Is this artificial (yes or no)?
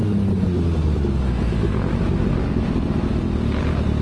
no